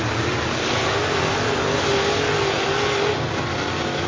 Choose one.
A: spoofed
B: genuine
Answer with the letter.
B